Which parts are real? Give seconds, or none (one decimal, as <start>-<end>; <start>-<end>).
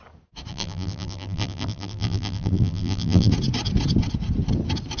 0.0-0.5; 3.3-5.0